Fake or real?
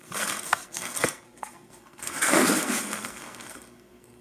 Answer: fake